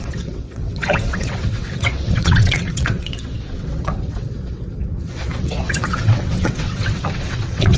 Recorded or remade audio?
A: remade